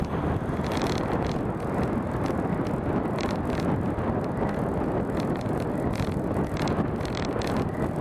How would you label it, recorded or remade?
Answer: recorded